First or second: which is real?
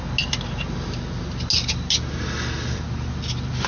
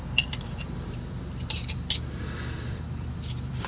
first